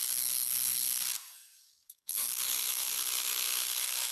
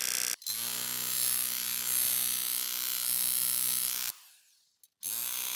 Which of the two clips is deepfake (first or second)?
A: first